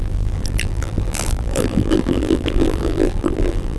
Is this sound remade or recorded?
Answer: remade